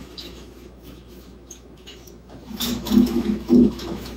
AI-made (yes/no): yes